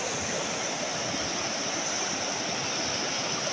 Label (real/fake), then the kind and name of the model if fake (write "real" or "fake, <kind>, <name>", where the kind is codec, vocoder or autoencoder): real